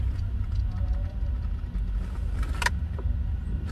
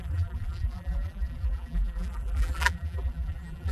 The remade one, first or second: second